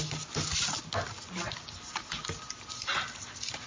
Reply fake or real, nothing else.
real